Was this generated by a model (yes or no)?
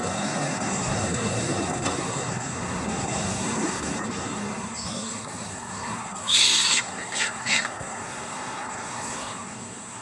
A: yes